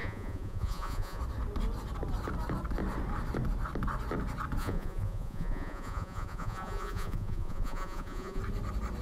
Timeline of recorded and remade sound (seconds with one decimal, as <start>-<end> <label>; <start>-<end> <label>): 0.0-1.2 remade; 1.2-4.6 recorded; 4.6-8.4 remade; 8.4-9.0 recorded

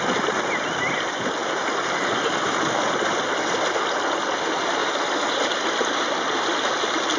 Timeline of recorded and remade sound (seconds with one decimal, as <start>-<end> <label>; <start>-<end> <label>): 0.0-1.4 recorded; 1.4-3.3 remade; 3.3-7.2 recorded

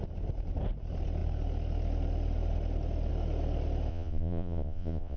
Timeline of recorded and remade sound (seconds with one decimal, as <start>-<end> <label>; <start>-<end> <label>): 0.0-3.9 recorded; 3.9-5.2 remade

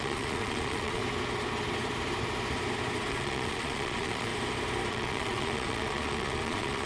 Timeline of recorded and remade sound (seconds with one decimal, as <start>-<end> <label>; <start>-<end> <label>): 0.0-1.0 remade; 1.0-3.1 recorded; 3.1-4.3 remade; 4.3-4.9 recorded; 4.9-6.9 remade

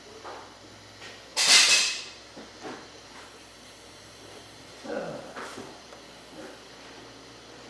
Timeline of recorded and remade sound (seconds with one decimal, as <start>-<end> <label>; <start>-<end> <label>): 0.0-1.3 recorded; 1.3-5.9 remade; 5.9-7.7 recorded

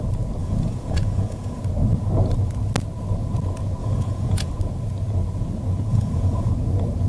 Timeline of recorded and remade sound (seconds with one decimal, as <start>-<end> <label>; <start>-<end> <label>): 0.0-0.4 recorded; 0.4-1.6 remade; 1.6-3.8 recorded; 3.8-4.5 remade; 4.5-5.9 recorded; 5.9-6.5 remade; 6.5-7.1 recorded

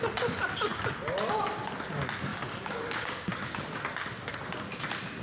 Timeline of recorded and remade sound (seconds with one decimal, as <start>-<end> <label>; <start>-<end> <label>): 0.0-2.3 recorded; 2.3-3.3 remade; 3.3-5.2 recorded